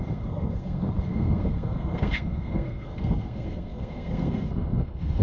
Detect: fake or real fake